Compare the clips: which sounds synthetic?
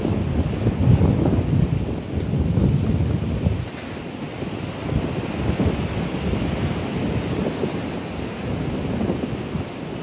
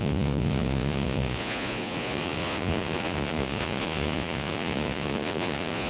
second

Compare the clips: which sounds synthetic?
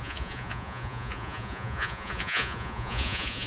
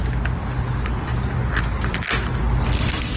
first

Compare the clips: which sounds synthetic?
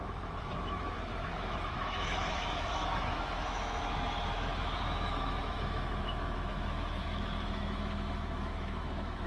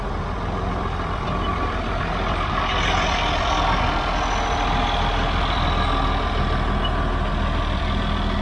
first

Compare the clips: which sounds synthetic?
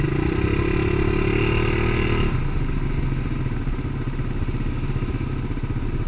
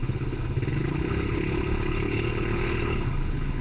second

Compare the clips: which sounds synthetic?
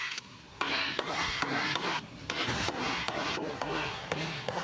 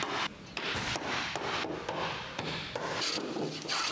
first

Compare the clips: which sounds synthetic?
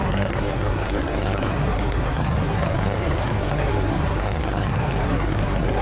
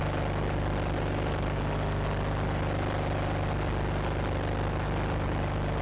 first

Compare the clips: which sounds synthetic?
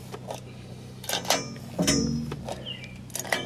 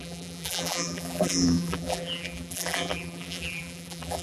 second